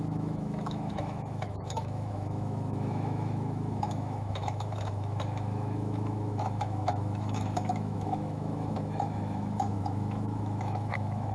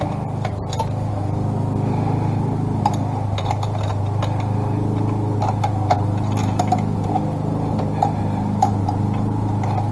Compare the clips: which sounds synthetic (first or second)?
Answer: first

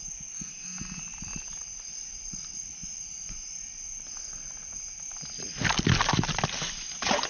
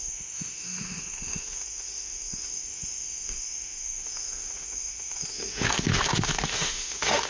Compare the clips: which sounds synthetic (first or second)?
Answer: second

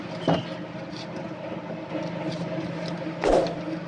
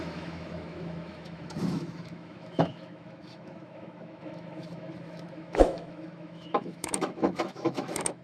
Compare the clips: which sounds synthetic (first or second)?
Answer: second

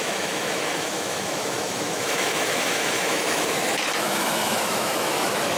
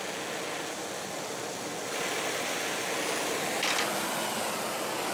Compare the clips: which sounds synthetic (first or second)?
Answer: first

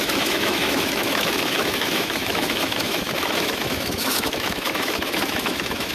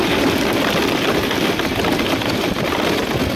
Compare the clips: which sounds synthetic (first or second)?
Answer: first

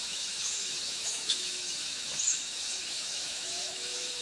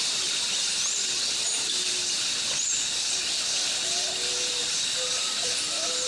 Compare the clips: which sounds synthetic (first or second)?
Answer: first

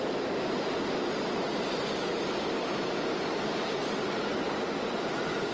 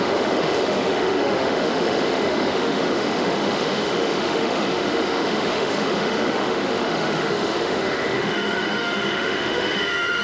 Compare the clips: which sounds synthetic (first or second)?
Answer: second